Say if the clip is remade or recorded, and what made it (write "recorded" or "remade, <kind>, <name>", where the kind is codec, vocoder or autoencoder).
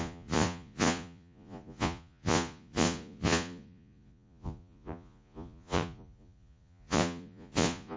remade, vocoder, Vocos